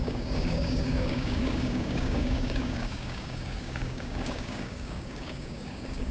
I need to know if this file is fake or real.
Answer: fake